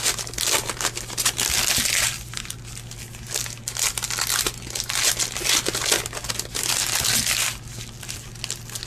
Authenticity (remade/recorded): recorded